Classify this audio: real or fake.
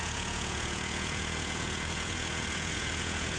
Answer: fake